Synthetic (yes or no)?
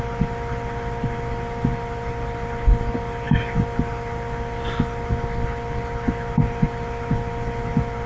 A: no